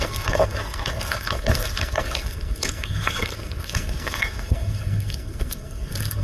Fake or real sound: fake